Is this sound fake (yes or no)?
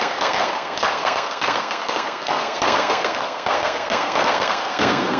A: yes